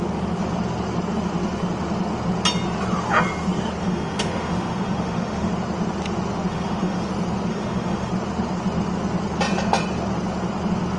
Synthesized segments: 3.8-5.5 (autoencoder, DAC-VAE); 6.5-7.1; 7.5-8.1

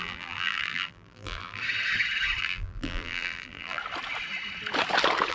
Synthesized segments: 0.0-1.6 (vocoder, BigVGAN v2); 2.4-3.8

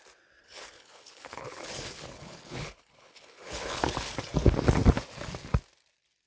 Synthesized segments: 0.4-4.2 (codec, HILCodec)

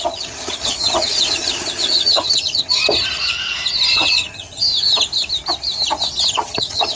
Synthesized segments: 0.0-2.8 (vocoder, HiFi-GAN); 3.9-4.7; 6.3-7.0

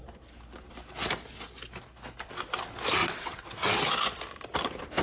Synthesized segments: 3.0-3.8 (vocoder, WaveNeXt)